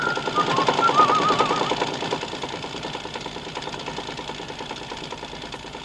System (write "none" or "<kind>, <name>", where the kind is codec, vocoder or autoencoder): vocoder, BigVGAN v2